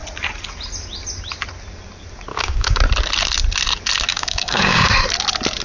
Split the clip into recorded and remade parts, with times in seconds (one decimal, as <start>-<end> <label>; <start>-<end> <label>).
0.0-2.3 recorded; 2.3-2.8 remade; 2.8-4.1 recorded; 4.1-4.9 remade; 4.9-5.6 recorded